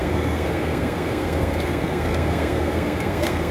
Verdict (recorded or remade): remade